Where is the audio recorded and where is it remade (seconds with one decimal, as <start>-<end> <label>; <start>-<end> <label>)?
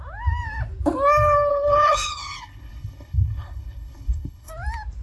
0.0-1.5 recorded; 1.5-4.5 remade; 4.5-5.0 recorded